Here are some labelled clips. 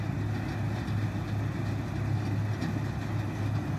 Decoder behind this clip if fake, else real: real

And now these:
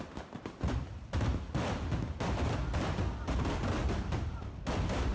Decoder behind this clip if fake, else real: real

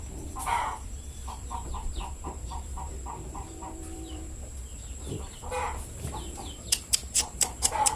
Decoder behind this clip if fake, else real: fake, vocoder, BigVGAN v2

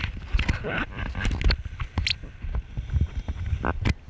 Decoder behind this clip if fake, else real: real